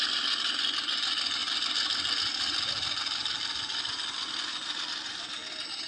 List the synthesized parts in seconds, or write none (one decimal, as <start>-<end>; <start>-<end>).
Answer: none

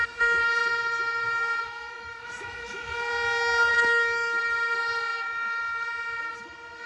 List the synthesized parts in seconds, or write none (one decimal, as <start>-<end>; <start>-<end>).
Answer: 0.6-3.1; 3.7-4.4; 5.1-5.6

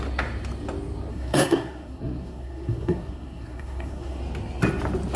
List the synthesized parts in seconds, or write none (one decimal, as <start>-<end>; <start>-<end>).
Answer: 1.1-4.2

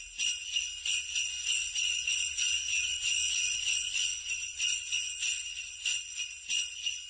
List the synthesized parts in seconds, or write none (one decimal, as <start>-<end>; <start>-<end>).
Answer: 1.5-2.4; 2.9-6.1

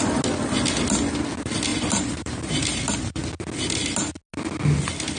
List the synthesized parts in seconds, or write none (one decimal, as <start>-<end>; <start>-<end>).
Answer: 1.7-2.8